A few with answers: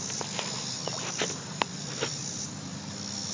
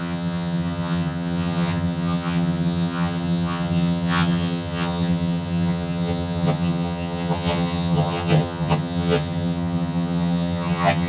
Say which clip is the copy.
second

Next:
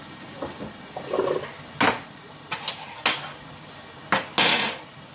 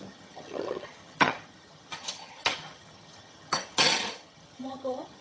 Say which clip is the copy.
second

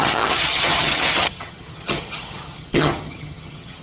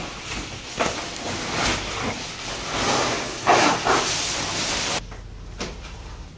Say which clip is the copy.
first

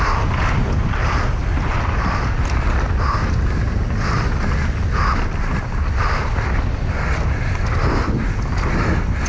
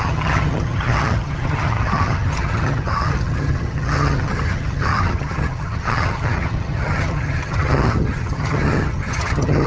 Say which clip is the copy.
second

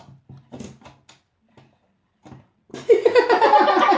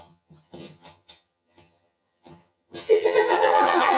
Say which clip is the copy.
second